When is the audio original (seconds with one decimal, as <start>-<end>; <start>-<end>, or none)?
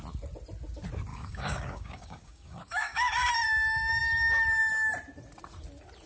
0.0-1.1; 3.1-6.1